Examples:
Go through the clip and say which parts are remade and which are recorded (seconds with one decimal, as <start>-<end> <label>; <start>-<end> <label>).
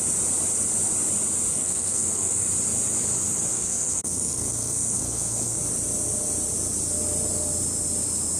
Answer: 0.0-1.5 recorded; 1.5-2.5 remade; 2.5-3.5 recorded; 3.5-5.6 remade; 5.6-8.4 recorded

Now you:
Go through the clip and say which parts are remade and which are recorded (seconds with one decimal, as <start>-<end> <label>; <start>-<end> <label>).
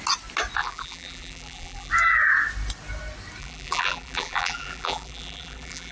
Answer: 0.0-0.6 recorded; 0.6-1.9 remade; 1.9-3.4 recorded; 3.4-5.9 remade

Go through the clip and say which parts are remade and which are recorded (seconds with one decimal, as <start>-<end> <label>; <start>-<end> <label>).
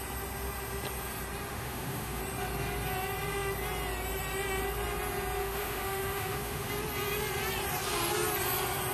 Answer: 0.0-1.5 recorded; 1.5-2.2 remade; 2.2-5.4 recorded; 5.4-6.7 remade; 6.7-8.9 recorded